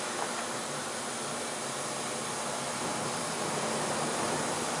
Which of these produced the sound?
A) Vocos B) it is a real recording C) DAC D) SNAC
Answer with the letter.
B